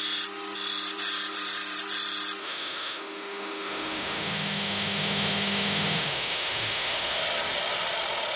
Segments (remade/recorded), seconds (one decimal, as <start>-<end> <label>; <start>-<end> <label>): 0.0-2.4 recorded; 2.4-7.2 remade; 7.2-8.4 recorded